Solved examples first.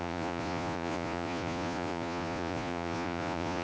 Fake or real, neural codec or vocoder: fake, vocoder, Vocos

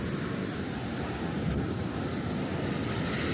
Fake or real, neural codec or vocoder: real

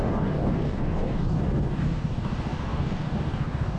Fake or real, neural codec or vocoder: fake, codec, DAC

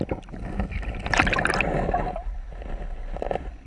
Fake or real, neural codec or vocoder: real